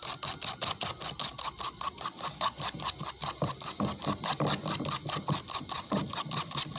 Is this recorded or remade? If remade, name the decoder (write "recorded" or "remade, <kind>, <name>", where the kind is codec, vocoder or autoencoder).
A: recorded